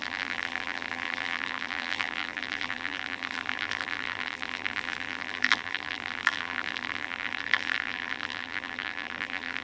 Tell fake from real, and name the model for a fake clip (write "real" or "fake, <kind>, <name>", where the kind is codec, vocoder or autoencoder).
fake, vocoder, BigVGAN v2